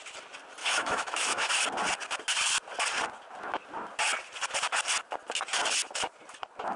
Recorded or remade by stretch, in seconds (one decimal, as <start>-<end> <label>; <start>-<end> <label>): 0.0-0.6 recorded; 0.6-1.5 remade; 1.5-6.8 recorded